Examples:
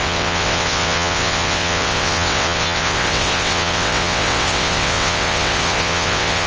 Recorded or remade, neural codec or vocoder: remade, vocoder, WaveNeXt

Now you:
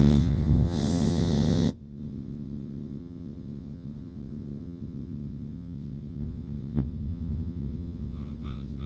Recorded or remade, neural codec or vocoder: remade, vocoder, WaveNeXt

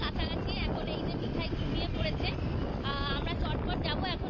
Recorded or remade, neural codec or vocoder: recorded